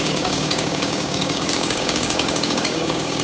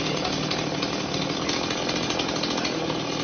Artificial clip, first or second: first